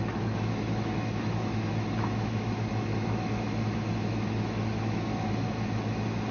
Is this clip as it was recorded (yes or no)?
no